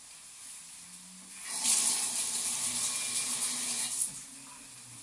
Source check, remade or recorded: recorded